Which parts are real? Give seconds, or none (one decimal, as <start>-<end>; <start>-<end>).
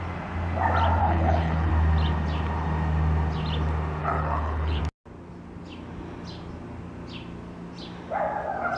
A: 0.0-1.0; 1.7-4.0; 4.8-8.8